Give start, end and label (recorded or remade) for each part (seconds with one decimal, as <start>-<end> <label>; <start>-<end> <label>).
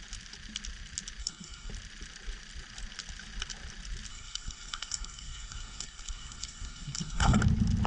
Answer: 0.0-1.2 recorded; 1.2-1.7 remade; 1.7-4.1 recorded; 4.1-7.4 remade; 7.4-7.9 recorded